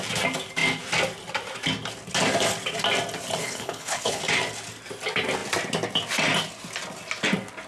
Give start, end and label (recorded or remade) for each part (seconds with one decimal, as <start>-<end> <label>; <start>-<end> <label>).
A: 0.0-3.4 recorded; 3.4-4.2 remade; 4.2-7.7 recorded